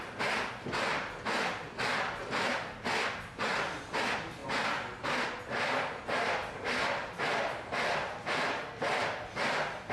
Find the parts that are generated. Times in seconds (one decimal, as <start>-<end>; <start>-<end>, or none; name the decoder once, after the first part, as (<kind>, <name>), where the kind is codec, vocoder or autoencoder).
none